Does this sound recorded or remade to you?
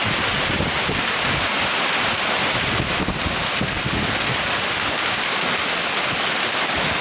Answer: recorded